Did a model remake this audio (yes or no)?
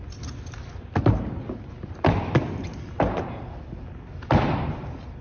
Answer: no